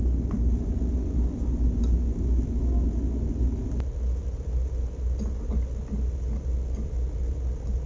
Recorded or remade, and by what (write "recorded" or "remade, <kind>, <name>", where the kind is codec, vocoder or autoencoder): recorded